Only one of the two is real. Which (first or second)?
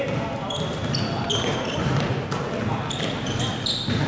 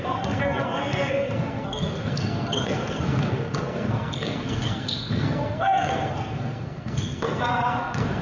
first